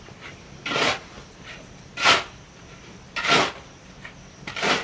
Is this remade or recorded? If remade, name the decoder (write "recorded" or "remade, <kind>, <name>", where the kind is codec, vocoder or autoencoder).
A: remade, vocoder, BigVGAN v2